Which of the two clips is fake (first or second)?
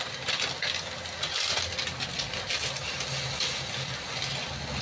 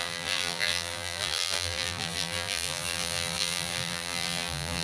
second